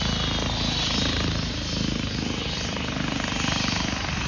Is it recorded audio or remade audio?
recorded